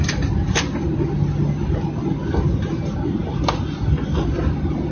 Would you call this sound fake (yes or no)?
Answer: no